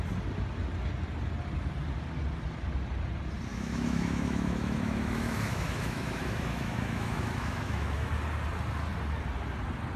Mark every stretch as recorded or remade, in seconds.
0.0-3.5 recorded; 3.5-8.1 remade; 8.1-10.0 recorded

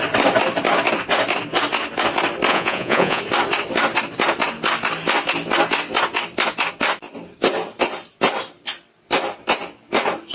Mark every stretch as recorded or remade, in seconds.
0.0-2.5 recorded; 2.5-3.2 remade; 3.2-10.3 recorded

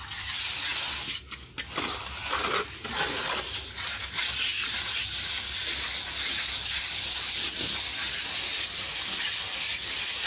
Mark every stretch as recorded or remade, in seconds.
0.0-2.2 recorded; 2.2-3.0 remade; 3.0-10.3 recorded

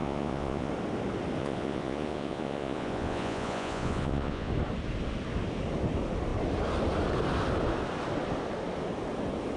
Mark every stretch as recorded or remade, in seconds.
0.0-0.7 remade; 0.7-1.4 recorded; 1.4-4.5 remade; 4.5-9.6 recorded

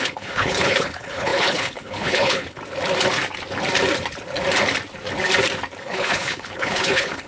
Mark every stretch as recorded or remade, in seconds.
0.0-2.6 remade; 2.6-5.8 recorded; 5.8-7.3 remade

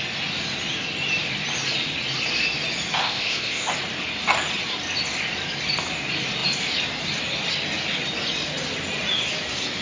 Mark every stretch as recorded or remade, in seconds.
0.0-3.0 recorded; 3.0-3.7 remade; 3.7-9.8 recorded

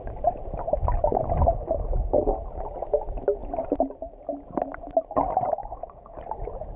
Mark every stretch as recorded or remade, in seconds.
0.0-5.6 recorded; 5.6-6.2 remade; 6.2-6.8 recorded